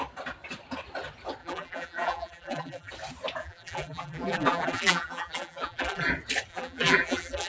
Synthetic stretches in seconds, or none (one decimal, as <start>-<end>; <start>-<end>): 1.4-2.9; 3.4-6.1; 6.5-7.5